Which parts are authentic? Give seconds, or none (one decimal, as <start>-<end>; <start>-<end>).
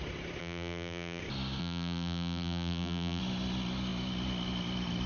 0.0-0.4; 1.2-1.6; 3.2-5.1